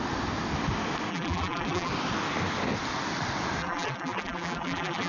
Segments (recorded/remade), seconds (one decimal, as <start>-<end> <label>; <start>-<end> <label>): 0.0-1.1 recorded; 1.1-1.9 remade; 1.9-3.6 recorded; 3.6-5.1 remade